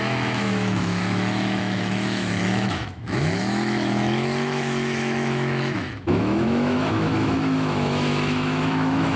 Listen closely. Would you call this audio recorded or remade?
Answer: remade